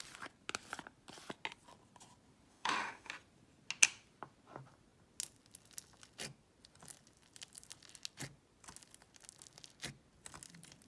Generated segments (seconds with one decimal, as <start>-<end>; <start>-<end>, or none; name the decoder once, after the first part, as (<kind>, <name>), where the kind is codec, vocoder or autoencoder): 2.5-3.1 (autoencoder, DAC-VAE)